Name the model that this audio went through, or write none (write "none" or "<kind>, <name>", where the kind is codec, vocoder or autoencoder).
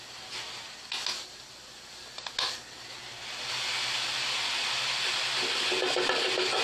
none